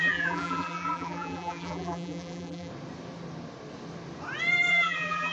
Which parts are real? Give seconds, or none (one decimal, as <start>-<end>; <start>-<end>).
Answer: 2.7-4.7